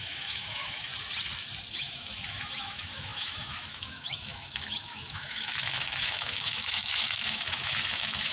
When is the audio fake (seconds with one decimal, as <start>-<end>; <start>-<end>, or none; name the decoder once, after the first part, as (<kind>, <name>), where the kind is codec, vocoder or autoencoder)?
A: 0.0-0.9 (autoencoder, DAC-VAE); 1.7-8.3